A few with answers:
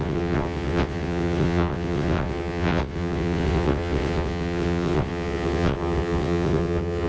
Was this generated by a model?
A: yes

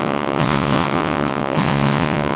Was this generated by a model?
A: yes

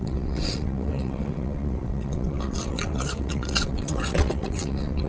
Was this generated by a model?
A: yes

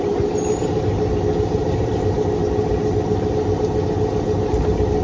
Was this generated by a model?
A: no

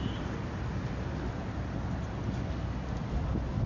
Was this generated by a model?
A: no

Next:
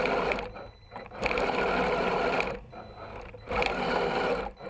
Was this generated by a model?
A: no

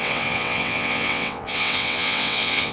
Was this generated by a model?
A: yes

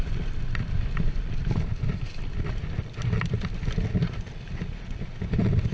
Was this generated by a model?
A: no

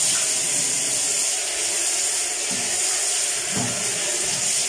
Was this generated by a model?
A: no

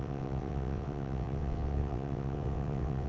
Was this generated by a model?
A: yes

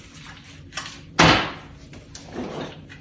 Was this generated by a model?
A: no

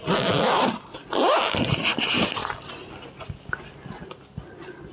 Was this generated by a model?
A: no